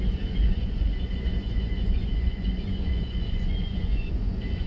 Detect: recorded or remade remade